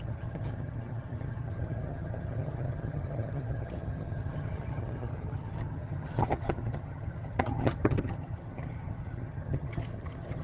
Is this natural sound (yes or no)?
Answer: no